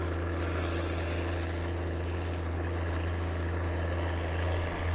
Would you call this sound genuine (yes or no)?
yes